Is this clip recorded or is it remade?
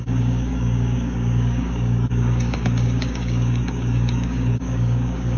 remade